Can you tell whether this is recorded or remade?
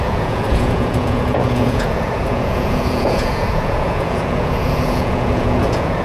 remade